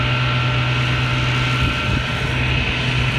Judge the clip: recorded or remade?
recorded